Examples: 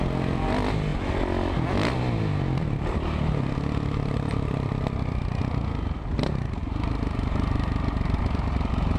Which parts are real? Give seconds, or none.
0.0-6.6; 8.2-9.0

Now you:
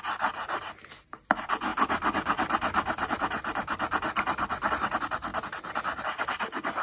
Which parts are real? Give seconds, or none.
0.0-6.8

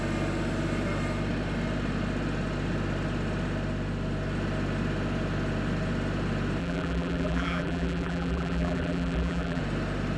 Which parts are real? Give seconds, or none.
0.0-6.6; 9.6-10.2

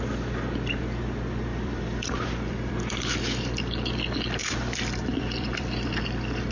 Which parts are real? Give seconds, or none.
0.0-1.5; 2.7-4.4; 6.0-6.5

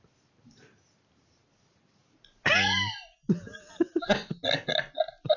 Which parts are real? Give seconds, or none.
0.0-5.4